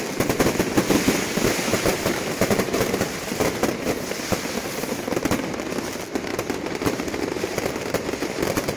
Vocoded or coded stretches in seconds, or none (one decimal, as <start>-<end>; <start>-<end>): 1.7-5.3; 6.3-7.7